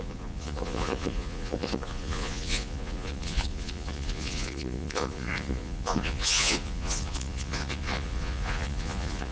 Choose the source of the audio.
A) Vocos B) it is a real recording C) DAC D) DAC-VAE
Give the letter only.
A